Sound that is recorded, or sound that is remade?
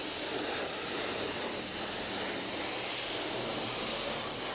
recorded